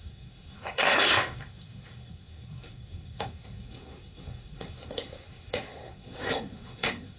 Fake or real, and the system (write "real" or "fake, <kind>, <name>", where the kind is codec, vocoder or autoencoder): fake, codec, SNAC